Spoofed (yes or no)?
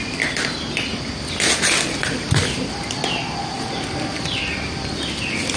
no